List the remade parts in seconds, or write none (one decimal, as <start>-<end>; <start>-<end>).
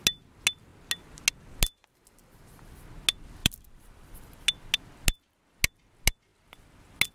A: 3.4-4.4